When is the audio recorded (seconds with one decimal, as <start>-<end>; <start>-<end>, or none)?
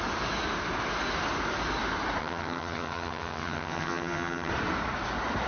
0.0-2.2; 4.5-5.5